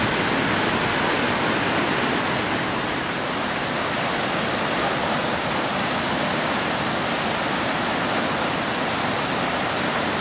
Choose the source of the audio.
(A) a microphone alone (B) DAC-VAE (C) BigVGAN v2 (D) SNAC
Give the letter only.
A